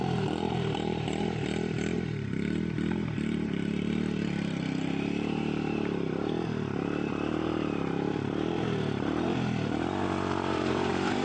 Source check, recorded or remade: remade